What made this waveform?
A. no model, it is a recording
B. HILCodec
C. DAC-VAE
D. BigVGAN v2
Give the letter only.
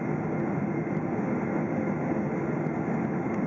A